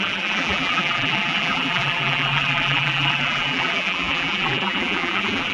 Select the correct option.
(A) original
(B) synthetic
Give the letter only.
B